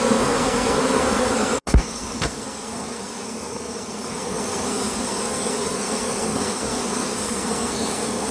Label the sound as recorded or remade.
remade